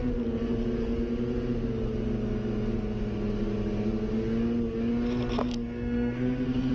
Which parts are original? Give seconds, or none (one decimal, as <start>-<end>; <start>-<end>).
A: 0.0-5.4